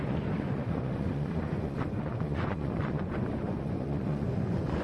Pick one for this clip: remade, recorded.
remade